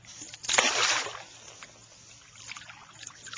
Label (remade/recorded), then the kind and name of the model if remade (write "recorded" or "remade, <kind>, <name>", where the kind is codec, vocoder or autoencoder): recorded